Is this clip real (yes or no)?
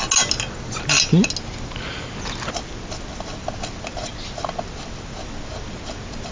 yes